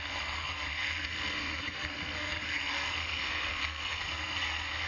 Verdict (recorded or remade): remade